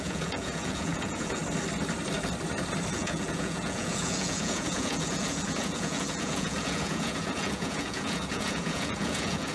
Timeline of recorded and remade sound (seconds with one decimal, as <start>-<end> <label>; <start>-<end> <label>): 0.0-1.4 remade; 1.4-2.9 recorded; 2.9-9.5 remade